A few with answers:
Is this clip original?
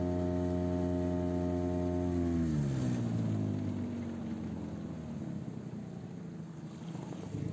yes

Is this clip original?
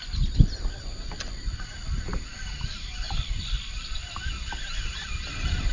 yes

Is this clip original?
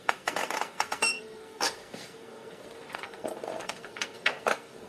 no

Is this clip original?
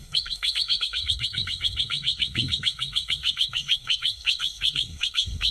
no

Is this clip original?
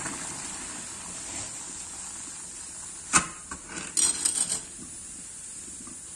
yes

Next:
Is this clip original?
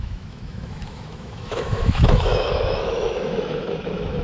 no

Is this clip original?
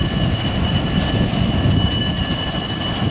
yes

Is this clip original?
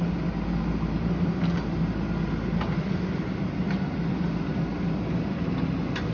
yes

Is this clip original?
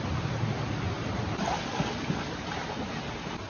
yes